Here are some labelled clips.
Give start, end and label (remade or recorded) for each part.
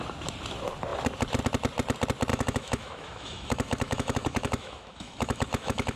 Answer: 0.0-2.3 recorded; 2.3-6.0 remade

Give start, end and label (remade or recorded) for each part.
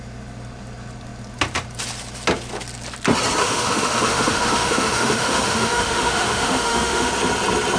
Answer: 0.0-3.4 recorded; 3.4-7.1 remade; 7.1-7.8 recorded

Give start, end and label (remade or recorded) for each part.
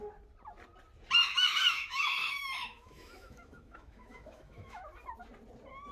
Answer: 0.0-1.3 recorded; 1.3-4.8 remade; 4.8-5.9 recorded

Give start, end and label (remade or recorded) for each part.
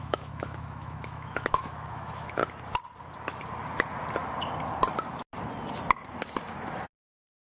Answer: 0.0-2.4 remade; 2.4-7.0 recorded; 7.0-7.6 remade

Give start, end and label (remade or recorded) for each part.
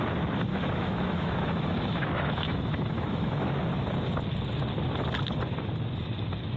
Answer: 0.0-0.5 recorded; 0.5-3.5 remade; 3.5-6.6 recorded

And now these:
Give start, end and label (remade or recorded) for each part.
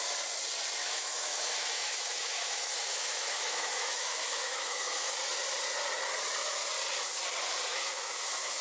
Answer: 0.0-0.8 recorded; 0.8-5.1 remade; 5.1-7.7 recorded; 7.7-8.6 remade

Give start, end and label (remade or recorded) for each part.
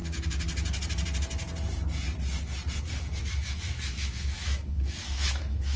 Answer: 0.0-2.8 recorded; 2.8-5.8 remade